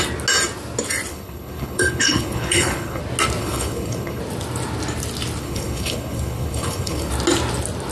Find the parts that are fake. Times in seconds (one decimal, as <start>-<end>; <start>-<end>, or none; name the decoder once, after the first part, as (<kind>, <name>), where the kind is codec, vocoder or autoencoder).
1.1-3.0 (codec, HILCodec); 3.4-4.2; 5.4-7.1